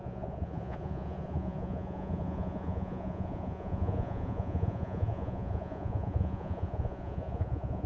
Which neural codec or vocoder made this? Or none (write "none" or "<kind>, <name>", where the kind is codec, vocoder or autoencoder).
vocoder, Vocos